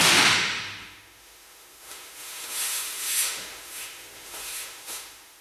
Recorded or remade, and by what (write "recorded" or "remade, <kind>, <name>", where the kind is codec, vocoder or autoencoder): remade, autoencoder, DAC-VAE